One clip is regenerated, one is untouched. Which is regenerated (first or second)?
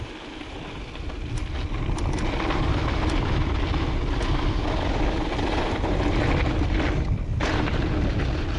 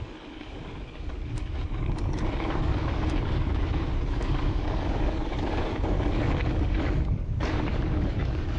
second